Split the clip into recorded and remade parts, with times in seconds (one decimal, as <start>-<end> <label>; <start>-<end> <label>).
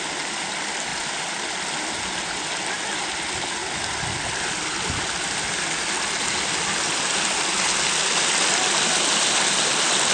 0.0-10.1 recorded